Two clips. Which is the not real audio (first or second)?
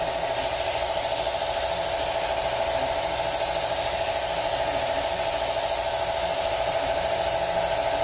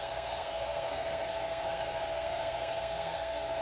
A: second